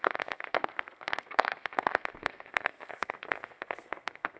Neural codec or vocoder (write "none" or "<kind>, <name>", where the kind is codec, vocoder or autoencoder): codec, SNAC